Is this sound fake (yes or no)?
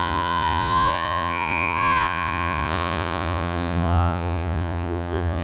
yes